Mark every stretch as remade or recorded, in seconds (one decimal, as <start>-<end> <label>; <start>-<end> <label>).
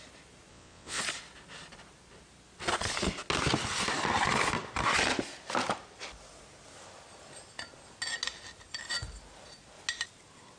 0.0-0.5 recorded; 0.5-1.0 remade; 1.0-10.6 recorded